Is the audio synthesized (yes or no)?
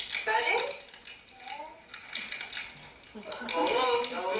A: no